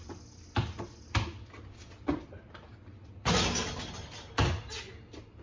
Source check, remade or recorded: recorded